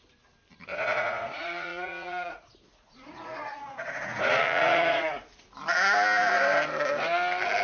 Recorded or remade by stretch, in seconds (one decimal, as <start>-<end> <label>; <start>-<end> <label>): 0.0-0.7 recorded; 0.7-5.1 remade; 5.1-7.6 recorded